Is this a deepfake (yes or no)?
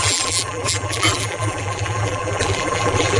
yes